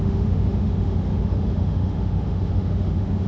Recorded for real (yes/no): no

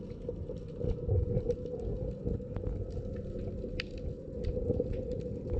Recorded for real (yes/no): yes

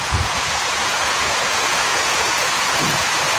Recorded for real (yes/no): no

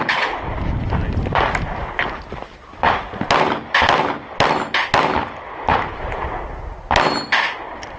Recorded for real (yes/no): yes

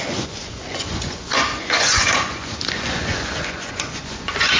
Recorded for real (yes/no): no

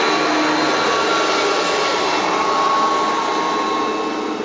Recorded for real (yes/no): yes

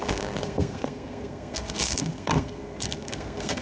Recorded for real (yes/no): no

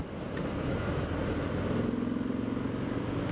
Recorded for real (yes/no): yes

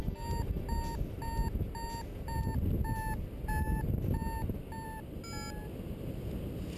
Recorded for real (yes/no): yes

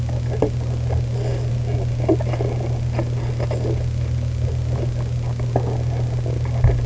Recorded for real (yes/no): yes